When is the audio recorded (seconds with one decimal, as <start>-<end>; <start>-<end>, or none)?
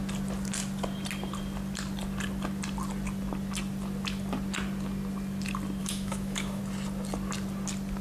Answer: 0.0-5.8; 6.6-8.0